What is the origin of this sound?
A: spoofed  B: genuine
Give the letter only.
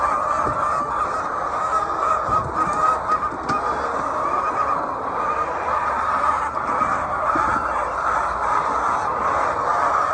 B